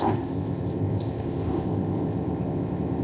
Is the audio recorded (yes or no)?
no